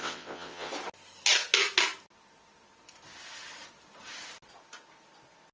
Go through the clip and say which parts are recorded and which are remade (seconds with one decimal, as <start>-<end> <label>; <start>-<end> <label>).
0.0-0.7 remade; 0.7-5.5 recorded